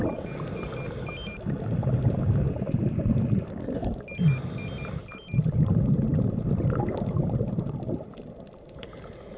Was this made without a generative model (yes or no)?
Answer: yes